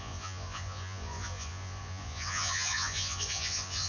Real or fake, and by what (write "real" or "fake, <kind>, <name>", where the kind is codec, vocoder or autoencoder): fake, vocoder, Vocos